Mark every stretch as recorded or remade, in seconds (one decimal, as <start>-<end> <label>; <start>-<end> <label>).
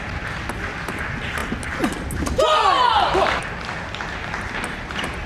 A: 0.0-5.3 recorded